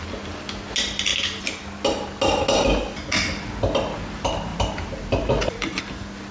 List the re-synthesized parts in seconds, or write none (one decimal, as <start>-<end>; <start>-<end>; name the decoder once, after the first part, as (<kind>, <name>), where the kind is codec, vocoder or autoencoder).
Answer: 4.5-5.8 (vocoder, BigVGAN v2)